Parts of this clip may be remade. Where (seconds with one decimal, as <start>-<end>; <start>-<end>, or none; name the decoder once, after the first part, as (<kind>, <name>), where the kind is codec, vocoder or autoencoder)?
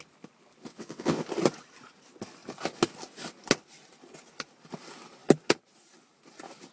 0.7-1.2 (vocoder, WaveNeXt)